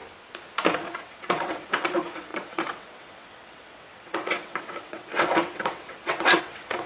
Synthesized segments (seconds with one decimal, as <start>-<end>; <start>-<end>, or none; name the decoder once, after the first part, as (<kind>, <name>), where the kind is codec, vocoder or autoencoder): 1.0-6.9 (vocoder, WaveNeXt)